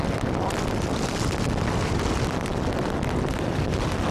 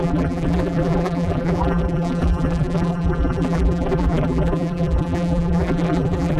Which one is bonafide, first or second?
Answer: first